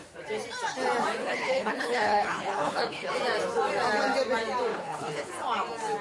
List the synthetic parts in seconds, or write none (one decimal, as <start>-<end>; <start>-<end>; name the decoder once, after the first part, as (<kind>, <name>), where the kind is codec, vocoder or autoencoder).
1.2-3.1 (codec, HILCodec); 4.7-5.3